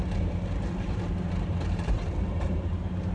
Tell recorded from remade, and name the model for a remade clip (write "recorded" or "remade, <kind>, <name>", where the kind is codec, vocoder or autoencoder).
remade, vocoder, BigVGAN v2